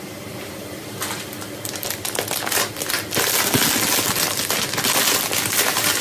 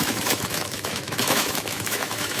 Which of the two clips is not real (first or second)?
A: second